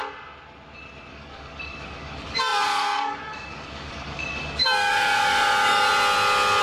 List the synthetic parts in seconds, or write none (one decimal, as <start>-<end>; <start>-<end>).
1.1-5.9